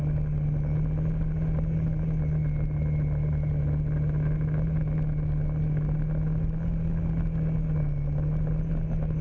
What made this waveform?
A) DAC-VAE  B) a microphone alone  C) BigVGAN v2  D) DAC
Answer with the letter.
B